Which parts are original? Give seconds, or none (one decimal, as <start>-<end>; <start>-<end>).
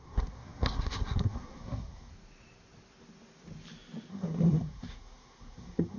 2.1-4.1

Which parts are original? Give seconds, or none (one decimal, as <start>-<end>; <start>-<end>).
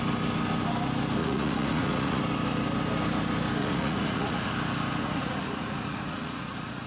0.0-1.2; 2.2-3.6; 4.5-5.0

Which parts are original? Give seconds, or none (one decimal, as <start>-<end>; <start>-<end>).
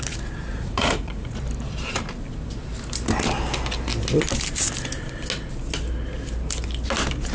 0.0-0.5; 1.4-7.3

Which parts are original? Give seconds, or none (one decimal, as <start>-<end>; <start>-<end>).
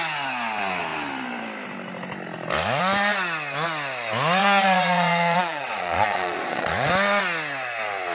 0.0-4.4; 6.9-8.1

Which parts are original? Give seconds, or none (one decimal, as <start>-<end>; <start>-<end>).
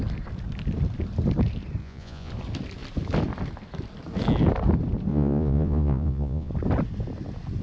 0.0-1.8; 2.3-5.1; 6.5-7.6